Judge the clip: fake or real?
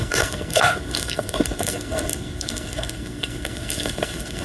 fake